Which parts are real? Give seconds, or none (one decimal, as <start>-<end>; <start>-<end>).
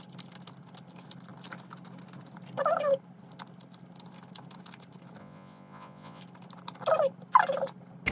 0.0-5.2; 6.2-8.1